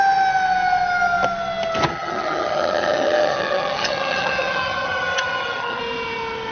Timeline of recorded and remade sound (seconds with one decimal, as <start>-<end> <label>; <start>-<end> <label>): 0.0-1.9 recorded; 1.9-5.8 remade; 5.8-6.5 recorded